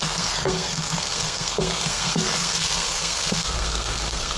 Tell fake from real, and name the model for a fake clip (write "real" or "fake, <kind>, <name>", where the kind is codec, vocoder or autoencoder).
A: fake, codec, SNAC